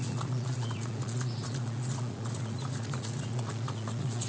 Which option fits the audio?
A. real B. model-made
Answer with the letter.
B